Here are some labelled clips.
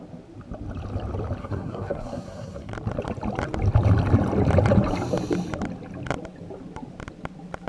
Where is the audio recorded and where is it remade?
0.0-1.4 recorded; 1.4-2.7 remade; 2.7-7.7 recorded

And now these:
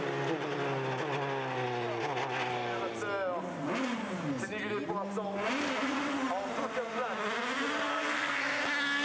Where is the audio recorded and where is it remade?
0.0-7.9 recorded; 7.9-8.6 remade; 8.6-9.0 recorded

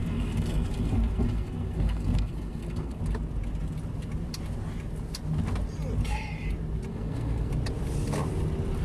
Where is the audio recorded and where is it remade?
0.0-3.0 remade; 3.0-6.9 recorded; 6.9-7.5 remade; 7.5-8.8 recorded

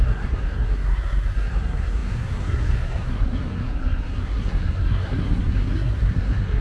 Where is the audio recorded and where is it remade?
0.0-6.6 remade